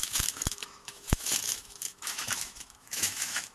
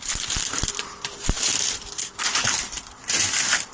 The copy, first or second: first